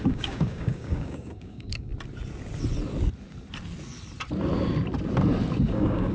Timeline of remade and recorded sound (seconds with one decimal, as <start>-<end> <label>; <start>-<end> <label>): 0.0-1.9 remade; 1.9-5.6 recorded; 5.6-6.1 remade